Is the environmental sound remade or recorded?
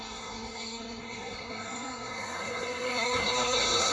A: remade